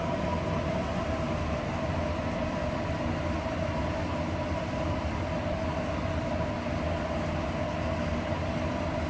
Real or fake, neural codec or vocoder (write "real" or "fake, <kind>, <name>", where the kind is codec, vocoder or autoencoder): real